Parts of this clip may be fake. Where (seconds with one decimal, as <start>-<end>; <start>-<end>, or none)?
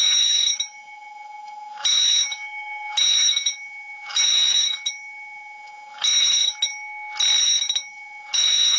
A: 0.0-6.7; 7.4-8.8